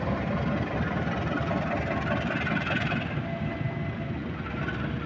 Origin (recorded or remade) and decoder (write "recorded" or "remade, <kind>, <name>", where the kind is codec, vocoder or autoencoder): recorded